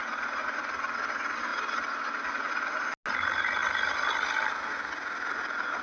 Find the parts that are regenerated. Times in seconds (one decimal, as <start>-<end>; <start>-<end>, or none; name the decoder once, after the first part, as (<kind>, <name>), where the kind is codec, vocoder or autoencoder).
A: none